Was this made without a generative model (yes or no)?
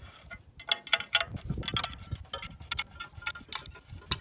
yes